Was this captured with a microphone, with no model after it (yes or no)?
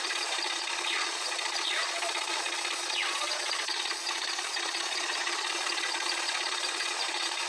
no